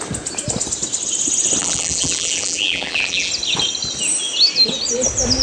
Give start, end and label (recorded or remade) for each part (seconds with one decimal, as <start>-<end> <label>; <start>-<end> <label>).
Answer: 0.0-1.6 recorded; 1.6-3.3 remade; 3.3-5.4 recorded